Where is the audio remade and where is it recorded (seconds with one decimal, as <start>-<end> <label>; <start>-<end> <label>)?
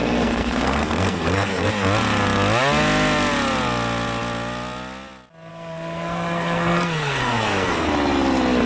0.0-1.7 remade; 1.7-5.5 recorded; 5.5-7.9 remade; 7.9-8.7 recorded